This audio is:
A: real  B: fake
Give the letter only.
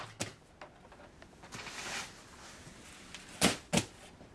A